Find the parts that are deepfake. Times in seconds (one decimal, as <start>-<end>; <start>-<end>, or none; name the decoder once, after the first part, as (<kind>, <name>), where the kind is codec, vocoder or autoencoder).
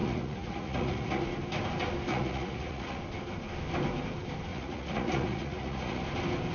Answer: 0.0-1.2 (vocoder, Vocos); 2.1-3.0; 4.5-6.0